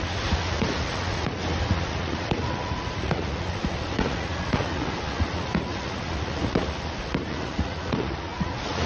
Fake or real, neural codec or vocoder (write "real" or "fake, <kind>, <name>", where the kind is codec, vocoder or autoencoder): fake, vocoder, Vocos